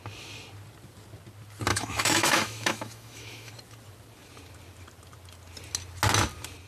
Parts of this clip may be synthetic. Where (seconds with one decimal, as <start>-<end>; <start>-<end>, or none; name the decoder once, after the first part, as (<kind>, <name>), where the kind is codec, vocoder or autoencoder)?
1.7-3.5 (autoencoder, DAC-VAE)